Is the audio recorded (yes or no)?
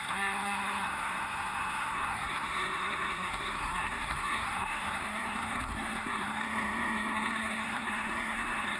no